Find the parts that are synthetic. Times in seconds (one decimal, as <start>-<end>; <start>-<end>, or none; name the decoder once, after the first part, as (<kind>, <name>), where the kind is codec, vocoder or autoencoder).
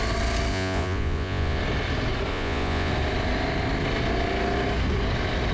0.5-1.6 (vocoder, Vocos); 2.3-2.9